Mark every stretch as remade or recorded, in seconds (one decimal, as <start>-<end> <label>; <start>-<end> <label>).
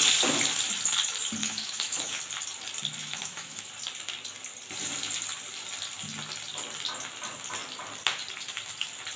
0.0-1.4 recorded; 1.4-2.2 remade; 2.2-3.0 recorded; 3.0-3.7 remade; 3.7-9.2 recorded